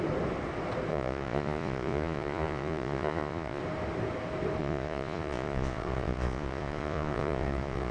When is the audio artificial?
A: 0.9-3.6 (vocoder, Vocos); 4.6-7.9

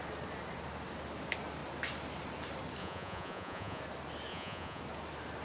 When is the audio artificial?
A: 2.8-3.8 (vocoder, Vocos); 4.3-4.8